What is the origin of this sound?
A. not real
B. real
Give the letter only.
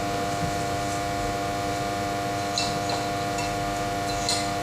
B